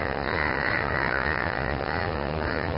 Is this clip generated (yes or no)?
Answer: yes